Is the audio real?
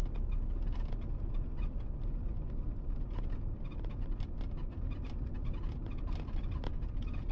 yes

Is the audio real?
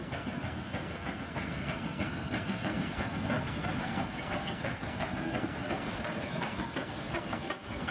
no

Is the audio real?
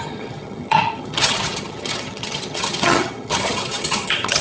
no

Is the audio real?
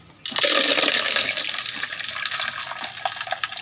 yes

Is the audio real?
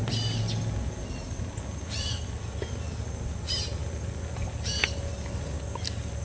yes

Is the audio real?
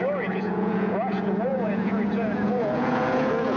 no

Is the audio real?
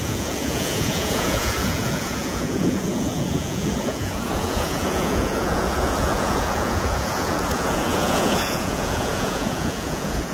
no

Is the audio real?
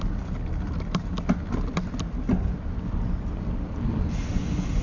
yes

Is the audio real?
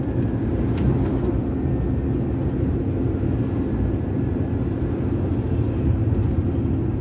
yes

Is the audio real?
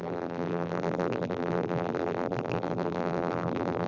no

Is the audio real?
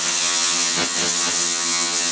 no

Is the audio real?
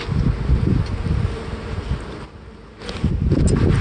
yes